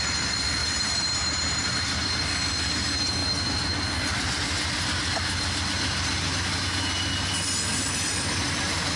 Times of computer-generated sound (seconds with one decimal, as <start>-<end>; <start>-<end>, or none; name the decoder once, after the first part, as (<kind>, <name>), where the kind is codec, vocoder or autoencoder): 0.6-2.3 (vocoder, BigVGAN v2)